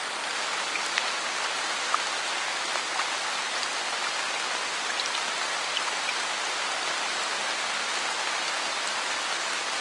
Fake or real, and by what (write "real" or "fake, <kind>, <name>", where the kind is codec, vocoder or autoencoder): real